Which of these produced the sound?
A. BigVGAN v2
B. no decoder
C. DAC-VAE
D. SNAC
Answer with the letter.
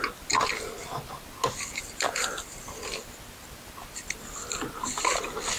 B